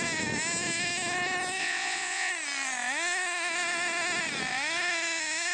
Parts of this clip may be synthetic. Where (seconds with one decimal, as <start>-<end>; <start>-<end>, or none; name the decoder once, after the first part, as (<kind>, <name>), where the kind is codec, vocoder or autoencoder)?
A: 1.6-2.3 (vocoder, WaveNeXt)